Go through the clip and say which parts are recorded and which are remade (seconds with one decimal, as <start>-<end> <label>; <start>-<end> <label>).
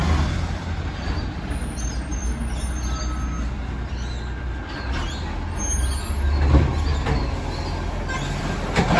0.0-9.0 recorded